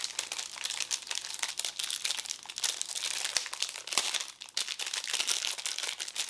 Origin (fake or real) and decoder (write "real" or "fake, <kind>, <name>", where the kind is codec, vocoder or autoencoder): real